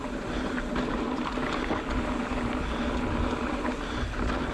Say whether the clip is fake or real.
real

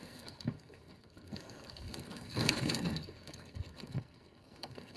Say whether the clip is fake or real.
fake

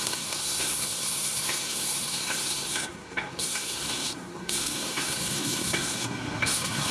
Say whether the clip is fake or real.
fake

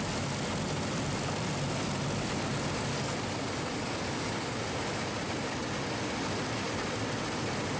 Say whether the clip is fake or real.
real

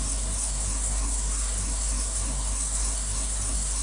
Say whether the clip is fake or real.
fake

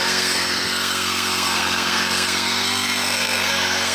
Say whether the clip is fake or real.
fake